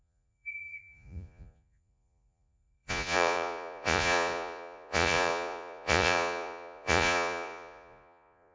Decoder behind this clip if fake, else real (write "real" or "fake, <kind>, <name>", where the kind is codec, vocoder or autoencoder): fake, vocoder, Vocos